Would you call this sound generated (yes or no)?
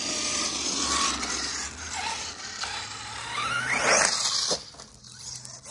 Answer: no